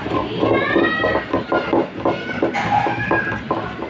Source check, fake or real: real